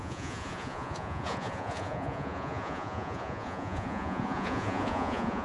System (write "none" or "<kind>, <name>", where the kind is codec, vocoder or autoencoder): vocoder, Vocos